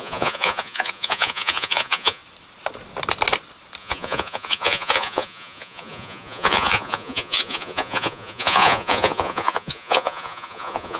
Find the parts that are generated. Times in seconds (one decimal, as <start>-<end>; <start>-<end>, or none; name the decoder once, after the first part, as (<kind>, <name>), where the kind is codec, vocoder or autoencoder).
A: 0.0-2.2 (vocoder, Vocos); 3.8-11.0